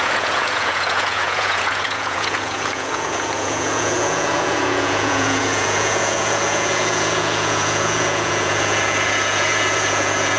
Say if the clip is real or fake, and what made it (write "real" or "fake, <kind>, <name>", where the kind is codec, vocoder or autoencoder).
fake, vocoder, Vocos